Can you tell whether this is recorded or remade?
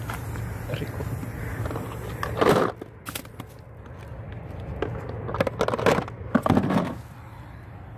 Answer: recorded